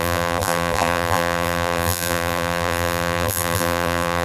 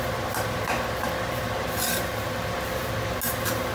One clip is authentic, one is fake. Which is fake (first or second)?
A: first